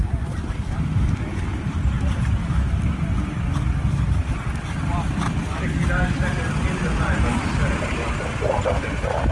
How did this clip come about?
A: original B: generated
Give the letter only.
A